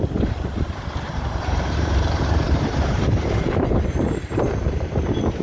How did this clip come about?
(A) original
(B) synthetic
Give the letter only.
B